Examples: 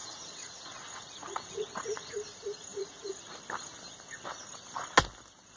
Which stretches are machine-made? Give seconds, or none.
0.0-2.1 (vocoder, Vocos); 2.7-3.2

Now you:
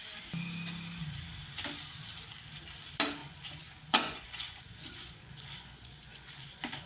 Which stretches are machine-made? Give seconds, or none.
3.2-6.9 (vocoder, Vocos)

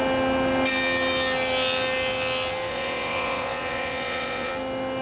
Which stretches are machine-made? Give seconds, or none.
2.7-4.5 (vocoder, Vocos)

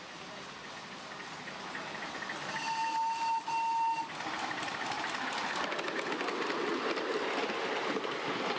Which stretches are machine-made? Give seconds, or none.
none